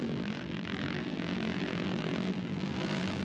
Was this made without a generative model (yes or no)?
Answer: no